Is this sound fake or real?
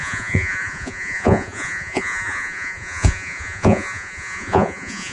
fake